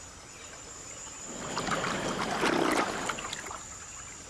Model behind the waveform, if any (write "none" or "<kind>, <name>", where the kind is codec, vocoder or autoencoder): none